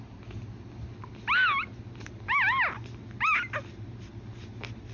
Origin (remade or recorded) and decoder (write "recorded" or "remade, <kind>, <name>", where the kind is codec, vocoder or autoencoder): recorded